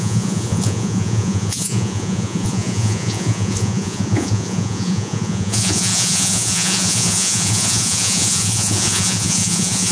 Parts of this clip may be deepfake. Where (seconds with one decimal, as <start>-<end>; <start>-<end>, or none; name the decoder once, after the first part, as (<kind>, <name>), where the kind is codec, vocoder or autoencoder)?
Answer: 0.0-9.9 (vocoder, Vocos)